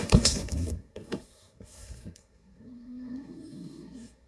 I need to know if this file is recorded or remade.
remade